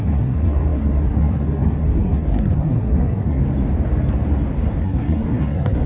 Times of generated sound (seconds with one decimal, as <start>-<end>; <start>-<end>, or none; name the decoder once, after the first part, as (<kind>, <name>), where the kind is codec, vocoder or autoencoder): 0.0-3.4 (codec, SNAC); 4.8-5.9